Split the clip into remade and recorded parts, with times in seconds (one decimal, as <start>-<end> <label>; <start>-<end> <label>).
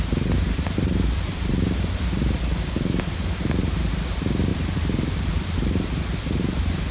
0.0-6.9 recorded